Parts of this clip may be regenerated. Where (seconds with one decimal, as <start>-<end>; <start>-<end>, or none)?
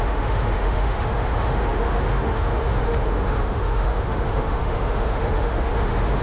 0.0-6.2